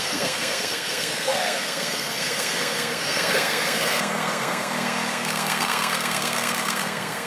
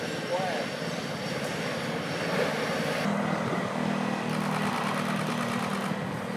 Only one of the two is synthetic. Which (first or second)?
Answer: first